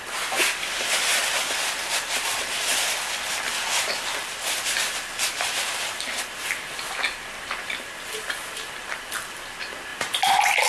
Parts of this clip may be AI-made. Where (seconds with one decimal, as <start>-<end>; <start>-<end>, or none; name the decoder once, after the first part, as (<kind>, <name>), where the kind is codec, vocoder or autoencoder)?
9.9-10.7 (vocoder, BigVGAN v2)